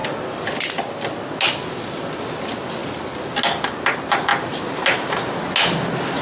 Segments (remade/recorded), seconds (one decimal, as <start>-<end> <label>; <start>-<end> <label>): 0.0-6.2 recorded